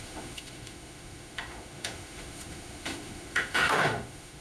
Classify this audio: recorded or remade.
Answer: remade